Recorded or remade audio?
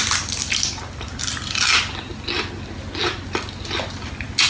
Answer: recorded